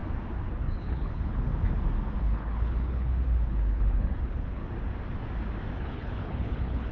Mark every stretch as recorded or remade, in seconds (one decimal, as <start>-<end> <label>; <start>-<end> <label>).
0.0-0.5 recorded; 0.5-1.5 remade; 1.5-2.2 recorded; 2.2-4.6 remade; 4.6-5.8 recorded; 5.8-6.9 remade